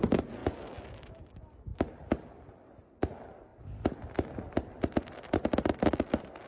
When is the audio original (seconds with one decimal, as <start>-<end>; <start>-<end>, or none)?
0.0-6.5